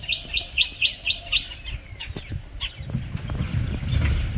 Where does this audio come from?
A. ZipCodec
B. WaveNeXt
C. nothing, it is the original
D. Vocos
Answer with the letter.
C